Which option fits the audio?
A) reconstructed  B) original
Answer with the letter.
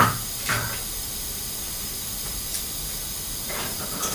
A